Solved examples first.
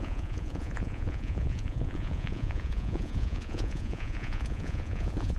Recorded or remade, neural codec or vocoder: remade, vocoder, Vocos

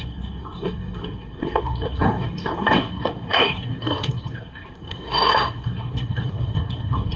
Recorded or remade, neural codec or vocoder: remade, codec, SNAC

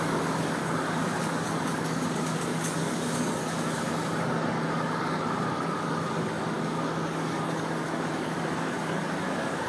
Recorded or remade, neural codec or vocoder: remade, codec, DAC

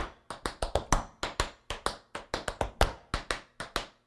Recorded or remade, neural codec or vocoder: recorded